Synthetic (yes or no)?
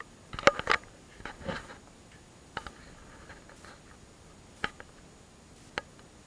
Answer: no